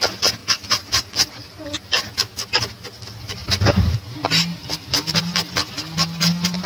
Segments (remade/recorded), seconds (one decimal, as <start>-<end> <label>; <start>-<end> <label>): 0.0-0.4 recorded; 0.4-2.1 remade; 2.1-6.7 recorded

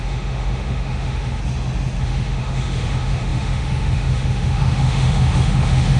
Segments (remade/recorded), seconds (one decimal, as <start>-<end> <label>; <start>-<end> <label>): 0.0-1.4 remade; 1.4-2.0 recorded; 2.0-6.0 remade

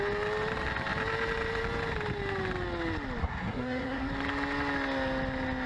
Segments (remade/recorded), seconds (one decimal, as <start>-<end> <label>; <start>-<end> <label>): 0.0-3.2 recorded; 3.2-4.1 remade; 4.1-5.7 recorded